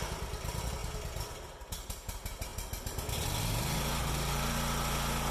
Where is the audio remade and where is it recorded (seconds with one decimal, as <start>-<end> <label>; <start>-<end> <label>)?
0.0-5.3 recorded